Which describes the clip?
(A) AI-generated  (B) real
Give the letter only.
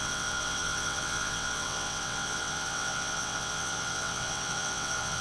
A